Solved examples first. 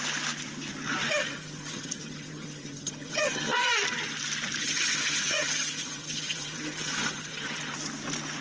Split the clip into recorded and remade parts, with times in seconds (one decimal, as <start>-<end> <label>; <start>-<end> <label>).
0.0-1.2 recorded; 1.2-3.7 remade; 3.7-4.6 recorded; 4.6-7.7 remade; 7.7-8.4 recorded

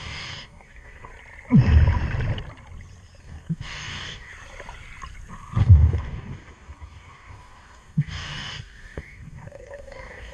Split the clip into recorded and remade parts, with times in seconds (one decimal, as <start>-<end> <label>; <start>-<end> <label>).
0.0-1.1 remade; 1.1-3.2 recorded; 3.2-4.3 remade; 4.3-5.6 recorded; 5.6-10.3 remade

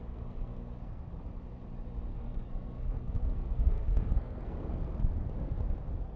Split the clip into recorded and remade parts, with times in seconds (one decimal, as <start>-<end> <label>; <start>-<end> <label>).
0.0-1.1 remade; 1.1-2.1 recorded; 2.1-5.8 remade; 5.8-6.2 recorded

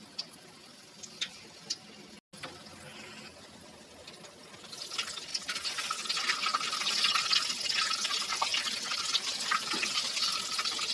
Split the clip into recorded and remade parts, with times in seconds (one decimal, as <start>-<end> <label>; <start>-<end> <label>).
0.0-10.9 recorded

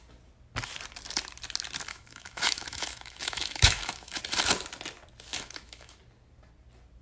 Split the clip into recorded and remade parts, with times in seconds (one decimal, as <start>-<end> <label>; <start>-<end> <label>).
0.0-1.9 recorded; 1.9-4.2 remade; 4.2-5.3 recorded; 5.3-6.0 remade; 6.0-7.0 recorded

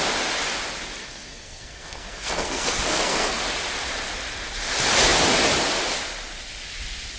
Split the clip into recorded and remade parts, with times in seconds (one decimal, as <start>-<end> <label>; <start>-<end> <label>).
0.0-1.0 recorded; 1.0-3.4 remade; 3.4-7.2 recorded

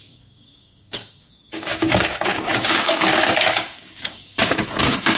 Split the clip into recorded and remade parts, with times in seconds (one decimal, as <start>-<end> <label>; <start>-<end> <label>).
0.0-5.2 remade

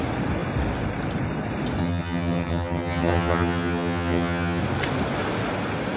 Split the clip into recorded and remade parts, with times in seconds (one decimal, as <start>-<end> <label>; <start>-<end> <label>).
0.0-1.8 recorded; 1.8-4.6 remade; 4.6-6.0 recorded